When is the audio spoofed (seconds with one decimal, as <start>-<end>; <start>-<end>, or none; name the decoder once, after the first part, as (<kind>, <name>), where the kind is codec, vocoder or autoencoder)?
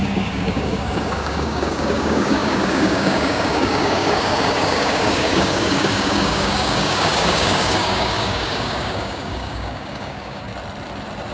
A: 0.0-10.5 (codec, DAC)